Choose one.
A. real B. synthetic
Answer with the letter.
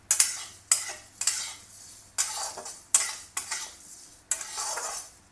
A